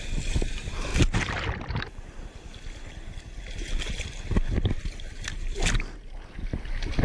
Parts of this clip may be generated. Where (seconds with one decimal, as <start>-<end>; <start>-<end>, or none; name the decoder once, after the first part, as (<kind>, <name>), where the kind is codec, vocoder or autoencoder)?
none